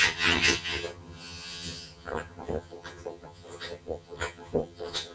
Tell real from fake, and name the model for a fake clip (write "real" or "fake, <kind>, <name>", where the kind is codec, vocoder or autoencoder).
fake, vocoder, HiFi-GAN